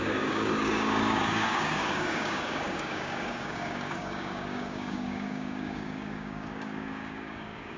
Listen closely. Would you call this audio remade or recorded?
remade